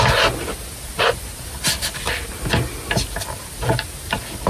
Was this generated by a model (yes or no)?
no